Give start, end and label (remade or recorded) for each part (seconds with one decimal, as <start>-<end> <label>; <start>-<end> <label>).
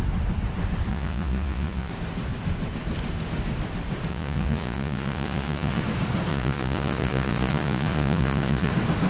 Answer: 0.0-0.9 recorded; 0.9-1.9 remade; 1.9-4.1 recorded; 4.1-5.8 remade; 5.8-6.3 recorded; 6.3-8.7 remade; 8.7-9.1 recorded